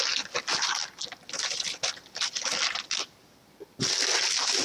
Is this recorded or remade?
recorded